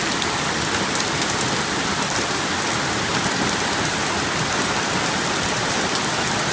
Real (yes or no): no